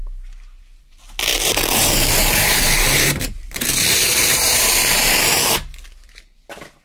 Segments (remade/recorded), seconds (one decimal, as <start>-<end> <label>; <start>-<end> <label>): 0.0-1.3 recorded; 1.3-5.4 remade; 5.4-6.8 recorded